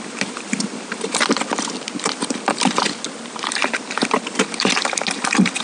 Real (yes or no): yes